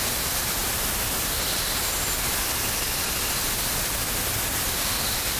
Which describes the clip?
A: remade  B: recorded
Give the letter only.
B